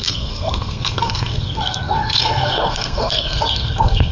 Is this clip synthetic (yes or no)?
yes